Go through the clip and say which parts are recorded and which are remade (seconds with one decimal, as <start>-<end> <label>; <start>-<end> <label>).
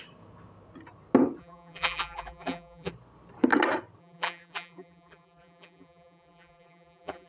0.0-1.4 recorded; 1.4-2.9 remade; 2.9-4.0 recorded; 4.0-7.3 remade